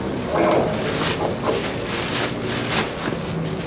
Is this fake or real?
real